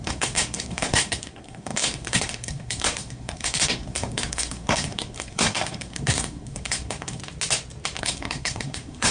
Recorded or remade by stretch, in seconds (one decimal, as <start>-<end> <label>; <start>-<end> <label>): 0.0-7.2 remade; 7.2-8.0 recorded; 8.0-9.1 remade